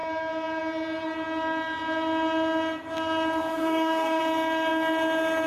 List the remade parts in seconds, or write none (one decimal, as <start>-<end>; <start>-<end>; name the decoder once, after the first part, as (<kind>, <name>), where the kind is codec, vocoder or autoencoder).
3.5-4.2 (codec, DAC)